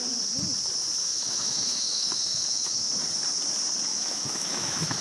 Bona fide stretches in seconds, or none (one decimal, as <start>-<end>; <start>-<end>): 0.0-1.0; 2.9-3.9